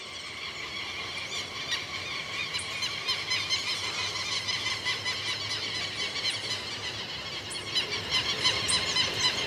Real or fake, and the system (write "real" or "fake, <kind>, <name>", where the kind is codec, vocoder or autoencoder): real